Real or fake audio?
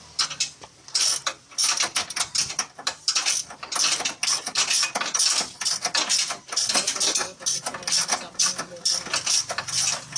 real